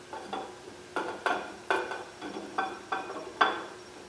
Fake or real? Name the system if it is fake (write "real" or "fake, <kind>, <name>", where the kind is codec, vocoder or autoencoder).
real